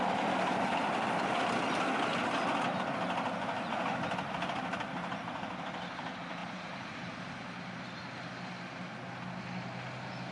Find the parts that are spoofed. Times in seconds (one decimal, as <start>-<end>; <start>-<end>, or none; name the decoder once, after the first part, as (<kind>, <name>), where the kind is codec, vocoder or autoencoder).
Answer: 6.4-7.1 (vocoder, BigVGAN v2)